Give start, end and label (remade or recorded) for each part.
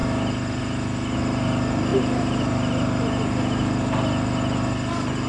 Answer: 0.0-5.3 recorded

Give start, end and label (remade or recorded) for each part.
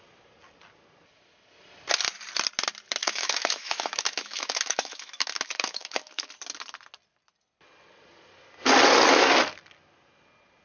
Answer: 0.0-3.0 recorded; 3.0-6.3 remade; 6.3-10.6 recorded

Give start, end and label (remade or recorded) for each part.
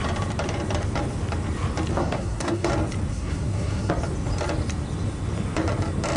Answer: 0.0-2.0 recorded; 2.0-2.7 remade; 2.7-3.1 recorded; 3.1-3.9 remade; 3.9-6.2 recorded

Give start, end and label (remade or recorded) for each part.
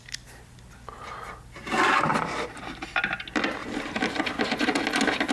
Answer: 0.0-2.1 recorded; 2.1-2.6 remade; 2.6-3.6 recorded; 3.6-4.8 remade; 4.8-5.3 recorded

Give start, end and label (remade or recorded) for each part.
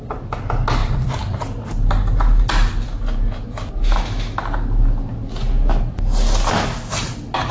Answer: 0.0-0.8 recorded; 0.8-1.6 remade; 1.6-7.5 recorded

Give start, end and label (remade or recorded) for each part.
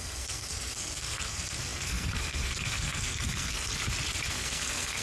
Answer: 0.0-3.7 remade; 3.7-4.3 recorded; 4.3-5.0 remade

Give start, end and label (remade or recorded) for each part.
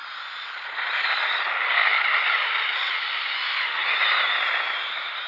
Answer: 0.0-5.3 recorded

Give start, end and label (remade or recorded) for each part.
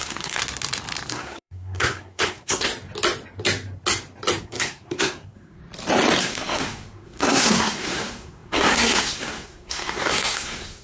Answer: 0.0-0.4 remade; 0.4-1.1 recorded; 1.1-2.7 remade; 2.7-4.4 recorded; 4.4-5.6 remade; 5.6-6.2 recorded; 6.2-10.8 remade